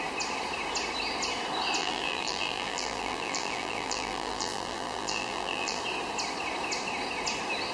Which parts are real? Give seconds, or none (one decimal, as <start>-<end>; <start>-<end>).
0.0-1.8; 5.8-7.7